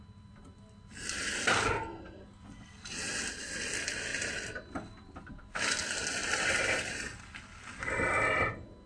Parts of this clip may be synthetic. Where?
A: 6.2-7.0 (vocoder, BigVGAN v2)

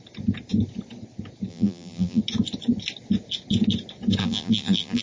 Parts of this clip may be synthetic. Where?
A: 1.5-2.2 (vocoder, BigVGAN v2); 4.2-5.0

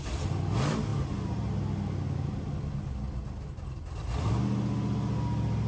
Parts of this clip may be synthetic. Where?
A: none

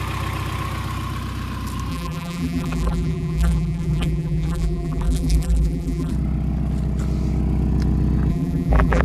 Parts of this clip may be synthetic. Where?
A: 1.9-6.1 (vocoder, BigVGAN v2); 8.3-9.0

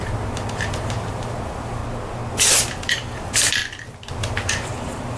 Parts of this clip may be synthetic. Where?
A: 0.0-1.8 (vocoder, BigVGAN v2); 2.3-3.6; 4.1-5.2

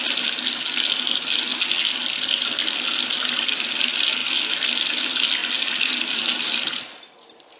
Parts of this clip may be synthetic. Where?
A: none

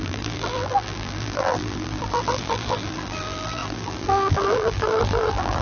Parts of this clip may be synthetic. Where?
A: 0.0-5.6 (vocoder, BigVGAN v2)